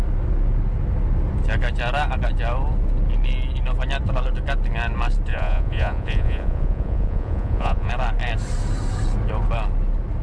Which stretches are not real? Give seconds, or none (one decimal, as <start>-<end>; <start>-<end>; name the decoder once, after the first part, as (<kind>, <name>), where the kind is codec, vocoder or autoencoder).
5.3-7.9 (vocoder, Vocos)